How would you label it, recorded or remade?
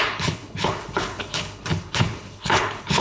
remade